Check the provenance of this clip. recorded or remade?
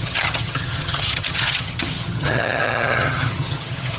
remade